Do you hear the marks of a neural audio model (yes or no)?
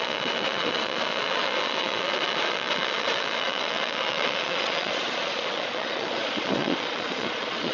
yes